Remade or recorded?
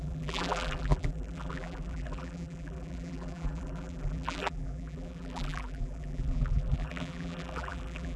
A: remade